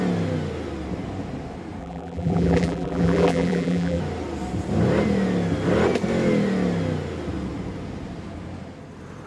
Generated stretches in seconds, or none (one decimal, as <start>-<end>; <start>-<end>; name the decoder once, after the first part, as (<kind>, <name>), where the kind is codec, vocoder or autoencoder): 1.8-4.0 (vocoder, BigVGAN v2)